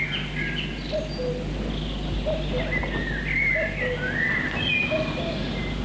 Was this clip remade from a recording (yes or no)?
no